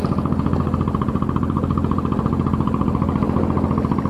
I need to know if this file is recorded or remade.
recorded